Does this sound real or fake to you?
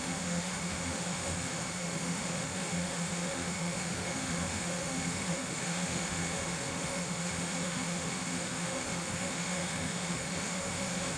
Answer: fake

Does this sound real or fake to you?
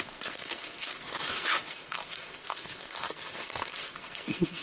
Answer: fake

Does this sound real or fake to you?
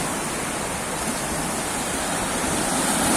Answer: real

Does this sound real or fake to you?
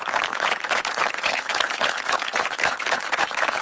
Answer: fake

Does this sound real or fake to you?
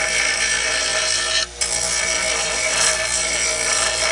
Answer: real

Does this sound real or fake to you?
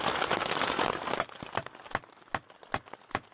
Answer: real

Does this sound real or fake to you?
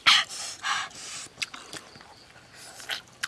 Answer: real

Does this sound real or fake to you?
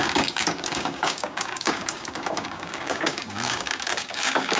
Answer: fake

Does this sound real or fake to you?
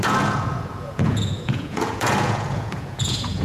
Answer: fake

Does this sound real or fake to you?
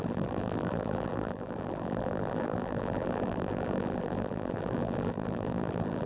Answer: fake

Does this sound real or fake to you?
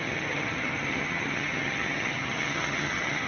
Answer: fake